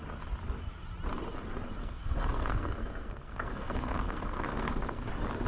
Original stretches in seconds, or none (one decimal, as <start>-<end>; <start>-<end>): 0.0-1.8; 5.1-5.5